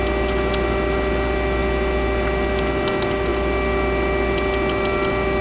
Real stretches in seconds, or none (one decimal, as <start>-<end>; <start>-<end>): 0.0-5.4